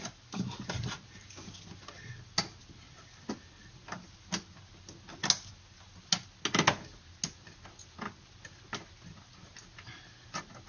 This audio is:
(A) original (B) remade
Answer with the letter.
A